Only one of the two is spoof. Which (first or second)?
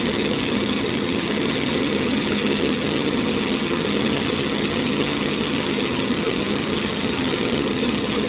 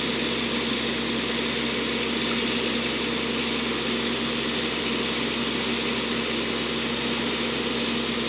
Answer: first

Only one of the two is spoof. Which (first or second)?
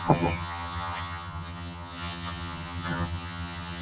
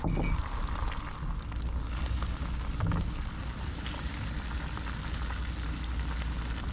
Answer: first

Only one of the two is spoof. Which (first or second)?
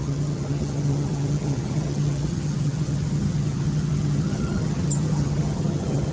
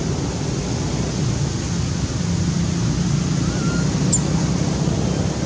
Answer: first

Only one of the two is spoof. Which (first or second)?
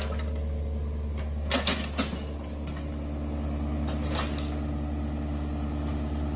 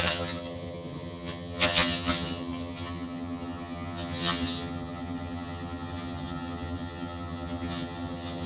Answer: second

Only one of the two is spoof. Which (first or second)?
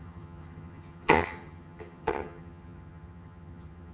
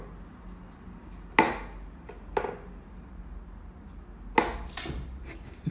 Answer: first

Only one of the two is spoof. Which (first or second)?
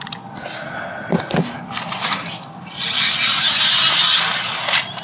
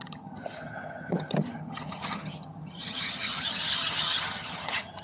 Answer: second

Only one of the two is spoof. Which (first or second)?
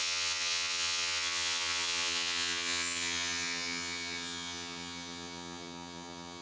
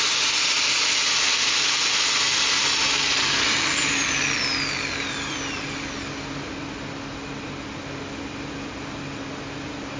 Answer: first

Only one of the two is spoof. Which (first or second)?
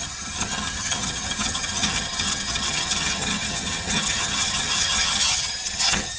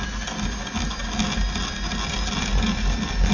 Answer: first